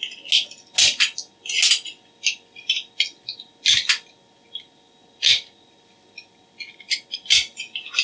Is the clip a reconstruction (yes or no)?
no